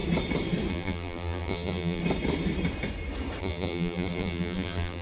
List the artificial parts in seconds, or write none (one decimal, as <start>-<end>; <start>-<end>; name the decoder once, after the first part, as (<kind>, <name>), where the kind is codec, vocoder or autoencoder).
0.7-2.0 (vocoder, BigVGAN v2); 3.4-5.0